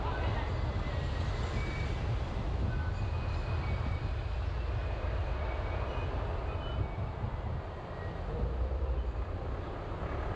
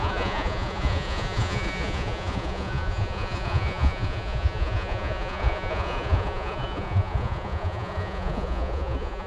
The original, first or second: first